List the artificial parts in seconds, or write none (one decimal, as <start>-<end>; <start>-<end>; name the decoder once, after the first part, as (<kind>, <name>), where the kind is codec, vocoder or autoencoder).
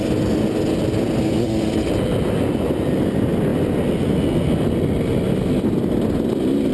none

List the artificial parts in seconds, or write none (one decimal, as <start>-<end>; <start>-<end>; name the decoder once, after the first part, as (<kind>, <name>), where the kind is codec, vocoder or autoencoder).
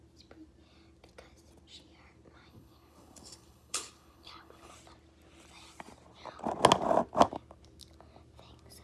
2.5-4.7 (codec, HILCodec)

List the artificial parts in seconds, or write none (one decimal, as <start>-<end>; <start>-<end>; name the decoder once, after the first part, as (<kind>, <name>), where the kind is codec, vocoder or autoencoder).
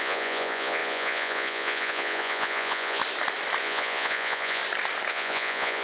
0.0-3.0 (vocoder, Vocos); 3.6-4.6; 5.1-5.8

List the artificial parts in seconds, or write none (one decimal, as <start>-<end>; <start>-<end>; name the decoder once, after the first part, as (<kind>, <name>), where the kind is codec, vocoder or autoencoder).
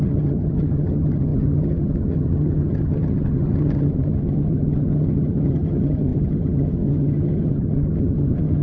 0.0-8.6 (vocoder, HiFi-GAN)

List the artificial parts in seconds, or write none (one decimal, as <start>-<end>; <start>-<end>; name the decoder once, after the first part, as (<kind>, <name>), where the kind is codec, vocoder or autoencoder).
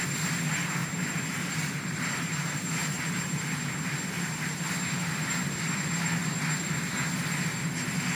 0.8-5.7 (vocoder, BigVGAN v2)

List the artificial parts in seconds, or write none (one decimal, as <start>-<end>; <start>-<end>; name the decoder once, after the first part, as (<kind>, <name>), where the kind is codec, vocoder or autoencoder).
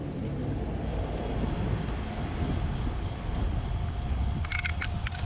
none